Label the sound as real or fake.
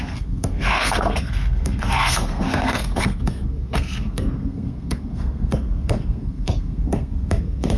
fake